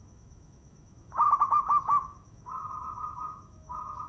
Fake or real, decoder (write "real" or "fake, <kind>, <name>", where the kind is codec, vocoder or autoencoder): fake, autoencoder, DAC-VAE